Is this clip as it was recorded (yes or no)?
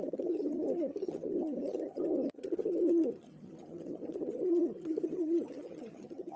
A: no